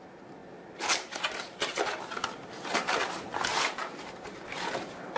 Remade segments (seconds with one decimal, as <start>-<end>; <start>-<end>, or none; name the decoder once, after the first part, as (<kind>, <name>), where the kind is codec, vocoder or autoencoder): none